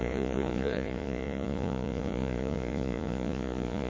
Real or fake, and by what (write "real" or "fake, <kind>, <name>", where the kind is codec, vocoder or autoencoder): fake, vocoder, Vocos